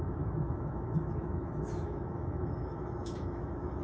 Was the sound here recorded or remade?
remade